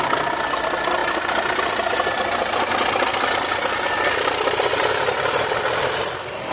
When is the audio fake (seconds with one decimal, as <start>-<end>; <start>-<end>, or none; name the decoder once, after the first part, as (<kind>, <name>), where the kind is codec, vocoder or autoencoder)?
4.7-5.6 (vocoder, BigVGAN v2)